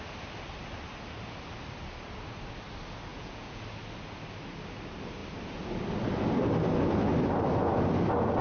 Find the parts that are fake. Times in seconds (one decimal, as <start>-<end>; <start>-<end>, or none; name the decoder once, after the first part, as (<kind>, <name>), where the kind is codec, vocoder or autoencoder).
3.1-3.6 (vocoder, Vocos)